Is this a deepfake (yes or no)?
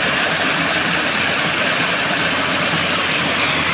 no